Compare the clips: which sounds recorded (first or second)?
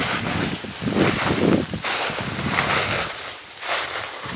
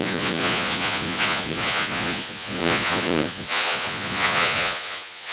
first